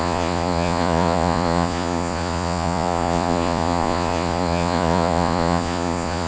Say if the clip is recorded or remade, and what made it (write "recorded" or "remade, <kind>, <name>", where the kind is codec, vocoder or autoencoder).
remade, vocoder, Vocos